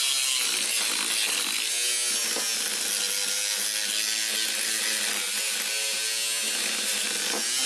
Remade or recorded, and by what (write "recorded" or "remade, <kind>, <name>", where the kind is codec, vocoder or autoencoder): recorded